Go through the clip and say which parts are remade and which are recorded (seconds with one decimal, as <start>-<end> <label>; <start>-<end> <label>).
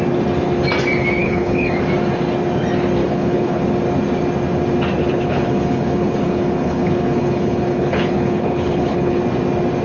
0.0-1.2 recorded; 1.2-1.7 remade; 1.7-3.0 recorded; 3.0-3.6 remade; 3.6-5.0 recorded; 5.0-9.2 remade; 9.2-9.8 recorded